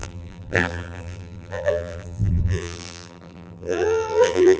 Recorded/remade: remade